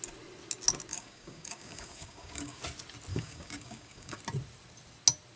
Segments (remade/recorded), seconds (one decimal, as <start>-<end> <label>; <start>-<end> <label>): 0.0-0.9 recorded; 0.9-2.6 remade; 2.6-3.1 recorded; 3.1-4.2 remade; 4.2-5.4 recorded